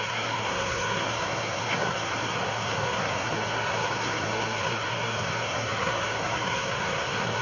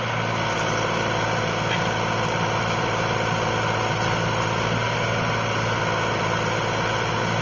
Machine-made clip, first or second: first